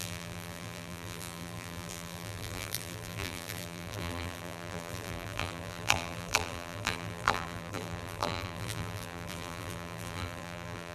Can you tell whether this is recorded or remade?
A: remade